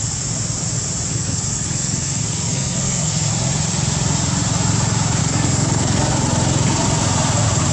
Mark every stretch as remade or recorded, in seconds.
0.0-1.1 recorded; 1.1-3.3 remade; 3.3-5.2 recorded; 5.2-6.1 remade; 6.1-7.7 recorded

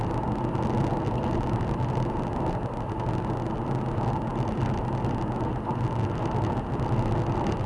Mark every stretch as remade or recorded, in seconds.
0.0-7.7 recorded